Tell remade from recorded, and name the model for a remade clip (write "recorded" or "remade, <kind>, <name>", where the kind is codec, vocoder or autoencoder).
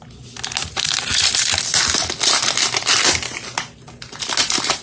recorded